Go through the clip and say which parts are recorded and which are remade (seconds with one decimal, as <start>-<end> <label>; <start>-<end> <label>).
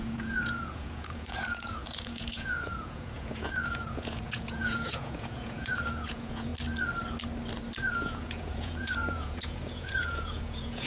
0.0-6.5 remade; 6.5-7.9 recorded; 7.9-10.9 remade